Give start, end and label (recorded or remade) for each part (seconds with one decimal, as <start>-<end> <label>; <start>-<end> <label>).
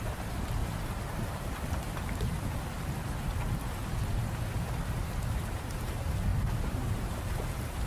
0.0-0.6 remade; 0.6-5.0 recorded; 5.0-7.9 remade